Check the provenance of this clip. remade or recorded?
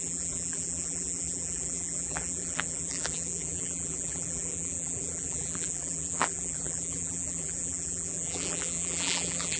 remade